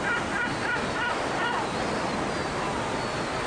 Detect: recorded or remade recorded